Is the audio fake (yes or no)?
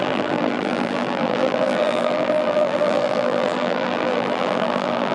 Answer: yes